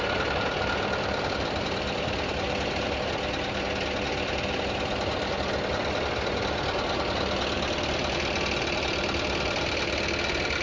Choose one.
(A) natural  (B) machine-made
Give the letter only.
A